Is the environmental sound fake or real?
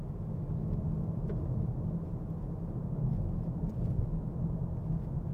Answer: real